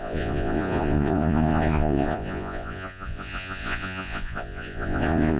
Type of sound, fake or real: fake